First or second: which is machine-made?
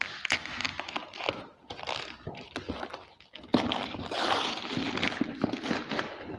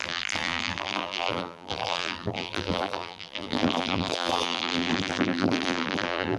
second